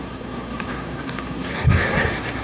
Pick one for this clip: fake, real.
fake